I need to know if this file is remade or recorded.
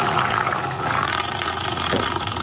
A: remade